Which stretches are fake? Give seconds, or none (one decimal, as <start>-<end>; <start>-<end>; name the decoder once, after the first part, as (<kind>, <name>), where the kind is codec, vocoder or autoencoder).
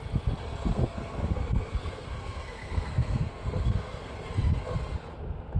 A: 0.7-4.1 (codec, SNAC)